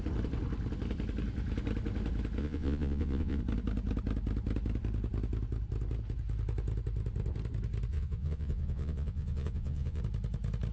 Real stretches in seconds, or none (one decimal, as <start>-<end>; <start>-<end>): 0.0-2.4; 3.4-7.9; 10.0-10.7